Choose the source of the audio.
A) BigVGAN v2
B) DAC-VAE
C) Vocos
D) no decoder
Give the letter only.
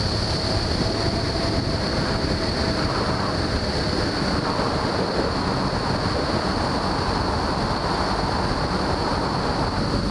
D